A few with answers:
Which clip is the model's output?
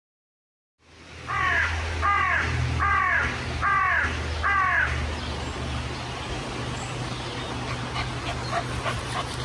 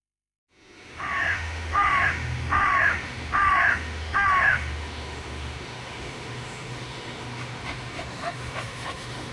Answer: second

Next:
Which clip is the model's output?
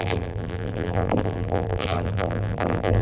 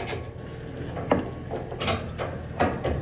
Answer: first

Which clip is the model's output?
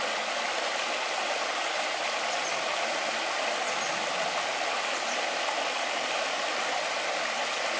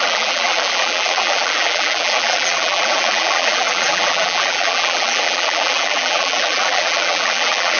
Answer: second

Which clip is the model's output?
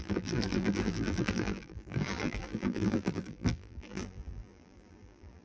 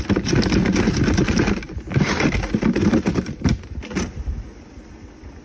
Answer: first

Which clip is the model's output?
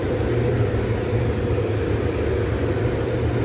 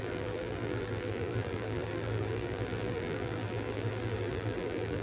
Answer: second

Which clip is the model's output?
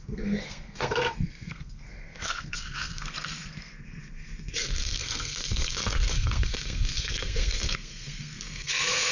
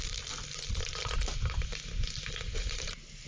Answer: first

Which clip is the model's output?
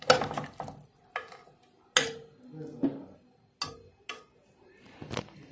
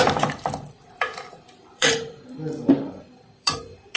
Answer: second